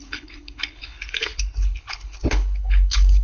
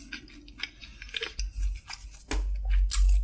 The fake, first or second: first